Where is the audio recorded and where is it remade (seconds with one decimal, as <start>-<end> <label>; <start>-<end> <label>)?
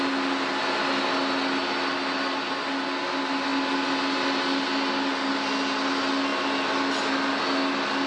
0.0-8.1 recorded